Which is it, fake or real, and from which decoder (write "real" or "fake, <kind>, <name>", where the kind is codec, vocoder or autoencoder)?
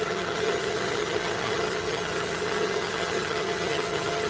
fake, vocoder, HiFi-GAN